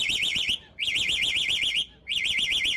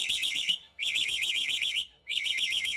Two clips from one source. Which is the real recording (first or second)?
first